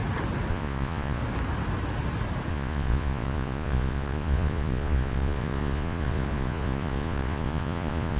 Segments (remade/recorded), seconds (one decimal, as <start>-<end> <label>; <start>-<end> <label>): 0.0-0.5 recorded; 0.5-1.2 remade; 1.2-2.5 recorded; 2.5-8.2 remade